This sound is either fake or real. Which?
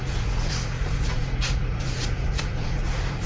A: fake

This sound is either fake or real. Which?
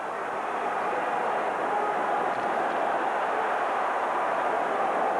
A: real